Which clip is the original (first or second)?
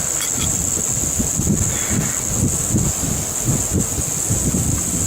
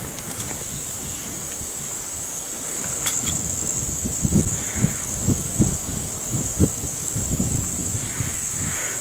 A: first